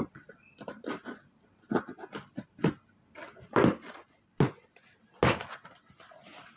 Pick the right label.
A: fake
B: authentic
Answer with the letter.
B